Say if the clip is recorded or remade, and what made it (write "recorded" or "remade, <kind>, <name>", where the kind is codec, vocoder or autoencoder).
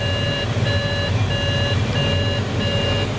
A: recorded